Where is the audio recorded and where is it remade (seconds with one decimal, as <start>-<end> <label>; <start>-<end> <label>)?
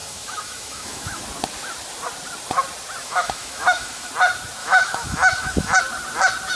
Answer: 0.0-1.2 remade; 1.2-3.0 recorded; 3.0-4.1 remade; 4.1-4.6 recorded; 4.6-5.8 remade; 5.8-6.6 recorded